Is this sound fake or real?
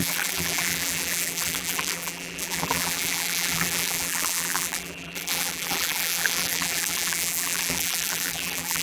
fake